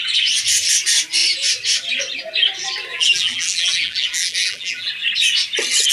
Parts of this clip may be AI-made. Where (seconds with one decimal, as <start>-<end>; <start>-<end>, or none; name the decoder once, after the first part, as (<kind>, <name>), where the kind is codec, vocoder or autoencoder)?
2.9-4.9 (vocoder, BigVGAN v2)